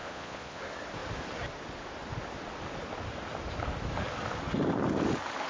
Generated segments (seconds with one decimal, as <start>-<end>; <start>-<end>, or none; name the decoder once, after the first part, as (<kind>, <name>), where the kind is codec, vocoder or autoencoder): 0.0-0.6 (vocoder, Vocos)